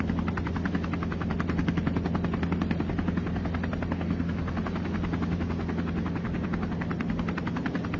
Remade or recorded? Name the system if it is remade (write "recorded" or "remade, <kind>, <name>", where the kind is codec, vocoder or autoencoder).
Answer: recorded